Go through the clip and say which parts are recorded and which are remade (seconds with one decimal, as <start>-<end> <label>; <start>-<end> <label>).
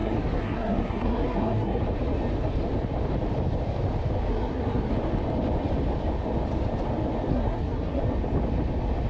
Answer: 0.0-1.8 remade; 1.8-4.3 recorded; 4.3-4.9 remade; 4.9-7.3 recorded; 7.3-8.0 remade; 8.0-9.1 recorded